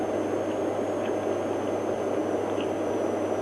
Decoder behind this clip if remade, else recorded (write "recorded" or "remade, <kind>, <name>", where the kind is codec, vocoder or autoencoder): recorded